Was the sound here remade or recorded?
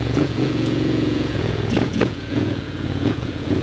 remade